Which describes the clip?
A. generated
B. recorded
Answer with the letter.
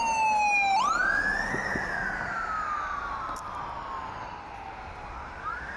B